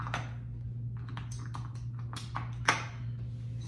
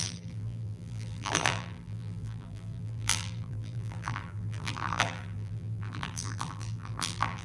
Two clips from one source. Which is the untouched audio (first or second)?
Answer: first